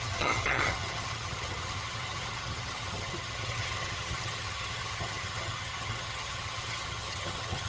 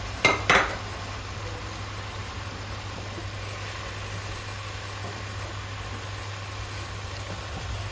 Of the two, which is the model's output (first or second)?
first